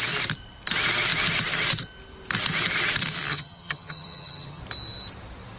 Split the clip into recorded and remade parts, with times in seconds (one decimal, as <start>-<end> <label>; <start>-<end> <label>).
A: 0.0-3.3 recorded; 3.3-4.6 remade; 4.6-5.6 recorded